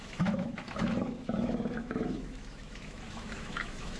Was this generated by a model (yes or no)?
yes